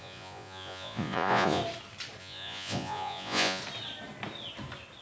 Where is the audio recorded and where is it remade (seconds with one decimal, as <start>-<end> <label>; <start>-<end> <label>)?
0.0-1.6 remade; 1.6-2.2 recorded; 2.2-3.6 remade; 3.6-5.0 recorded

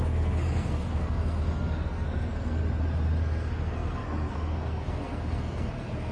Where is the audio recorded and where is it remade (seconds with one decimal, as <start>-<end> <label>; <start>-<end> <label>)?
0.0-2.6 remade; 2.6-3.2 recorded; 3.2-6.1 remade

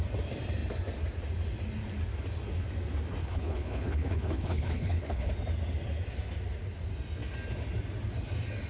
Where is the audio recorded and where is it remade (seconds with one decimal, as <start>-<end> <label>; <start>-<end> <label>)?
0.0-3.2 recorded; 3.2-5.3 remade; 5.3-8.7 recorded

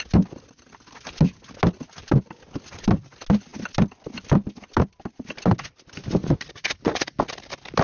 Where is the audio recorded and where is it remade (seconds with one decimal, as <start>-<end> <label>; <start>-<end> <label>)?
0.0-6.2 recorded; 6.2-7.2 remade; 7.2-7.8 recorded

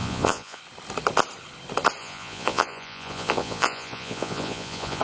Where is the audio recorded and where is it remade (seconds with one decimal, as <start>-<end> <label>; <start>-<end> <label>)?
0.0-0.6 remade; 0.6-2.0 recorded; 2.0-5.0 remade

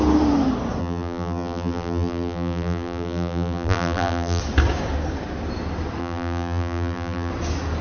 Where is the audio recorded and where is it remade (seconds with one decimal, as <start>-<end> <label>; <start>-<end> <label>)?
0.0-0.8 recorded; 0.8-4.4 remade; 4.4-6.0 recorded; 6.0-7.3 remade; 7.3-7.8 recorded

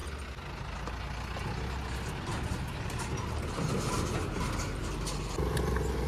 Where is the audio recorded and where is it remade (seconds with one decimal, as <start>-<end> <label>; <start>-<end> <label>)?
0.0-6.1 recorded

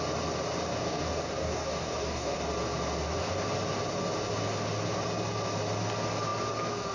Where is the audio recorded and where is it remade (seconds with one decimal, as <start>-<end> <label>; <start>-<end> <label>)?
0.0-0.7 recorded; 0.7-2.5 remade; 2.5-6.9 recorded